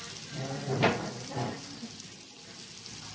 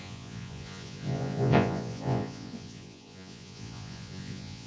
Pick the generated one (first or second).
second